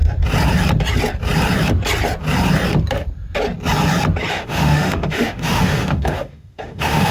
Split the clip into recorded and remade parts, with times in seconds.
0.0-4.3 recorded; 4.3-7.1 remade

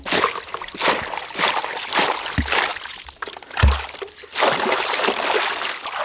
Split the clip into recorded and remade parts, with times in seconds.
0.0-6.0 recorded

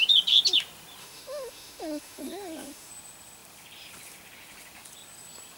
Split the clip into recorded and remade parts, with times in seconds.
0.0-1.0 recorded; 1.0-2.9 remade; 2.9-5.6 recorded

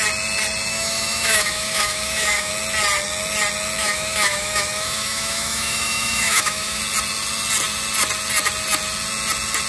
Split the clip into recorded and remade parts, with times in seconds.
0.0-0.7 recorded; 0.7-2.5 remade; 2.5-3.8 recorded; 3.8-6.8 remade; 6.8-9.7 recorded